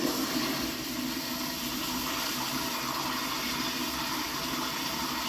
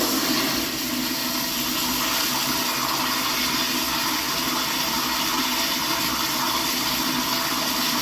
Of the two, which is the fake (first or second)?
first